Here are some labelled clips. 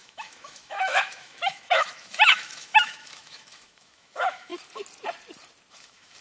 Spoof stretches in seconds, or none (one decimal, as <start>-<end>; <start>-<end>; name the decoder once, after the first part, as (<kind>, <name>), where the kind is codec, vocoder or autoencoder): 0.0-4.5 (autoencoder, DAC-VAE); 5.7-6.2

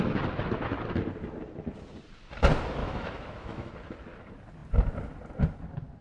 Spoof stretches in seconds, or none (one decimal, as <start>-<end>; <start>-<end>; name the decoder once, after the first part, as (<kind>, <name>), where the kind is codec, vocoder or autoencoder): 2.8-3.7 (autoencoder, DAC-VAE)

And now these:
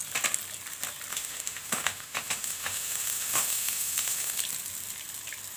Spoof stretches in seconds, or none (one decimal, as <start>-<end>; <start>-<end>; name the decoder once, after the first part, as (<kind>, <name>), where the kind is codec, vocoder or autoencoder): 1.1-4.4 (autoencoder, DAC-VAE)

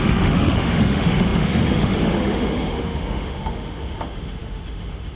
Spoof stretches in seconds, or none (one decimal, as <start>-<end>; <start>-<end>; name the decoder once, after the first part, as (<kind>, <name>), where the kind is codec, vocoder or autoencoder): 0.0-5.2 (autoencoder, DAC-VAE)

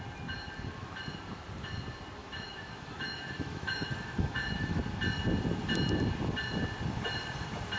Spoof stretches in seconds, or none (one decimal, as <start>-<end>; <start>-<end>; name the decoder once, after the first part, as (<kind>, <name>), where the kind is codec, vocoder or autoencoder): 2.2-4.8 (autoencoder, DAC-VAE)

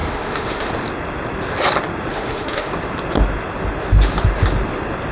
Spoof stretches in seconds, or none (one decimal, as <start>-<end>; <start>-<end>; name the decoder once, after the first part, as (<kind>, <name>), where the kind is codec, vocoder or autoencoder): 0.0-0.7 (autoencoder, DAC-VAE); 2.1-2.7

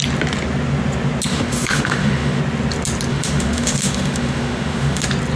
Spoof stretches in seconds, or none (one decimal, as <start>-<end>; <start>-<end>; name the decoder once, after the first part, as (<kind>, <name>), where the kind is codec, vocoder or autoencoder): 1.3-2.4 (autoencoder, DAC-VAE); 3.1-5.0